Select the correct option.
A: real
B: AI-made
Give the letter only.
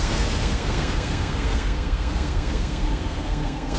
B